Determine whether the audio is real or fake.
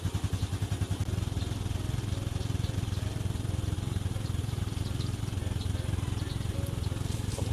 real